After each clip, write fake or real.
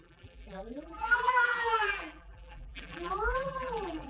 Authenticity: fake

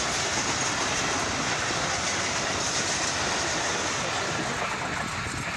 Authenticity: real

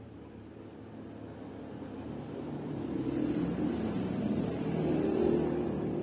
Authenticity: fake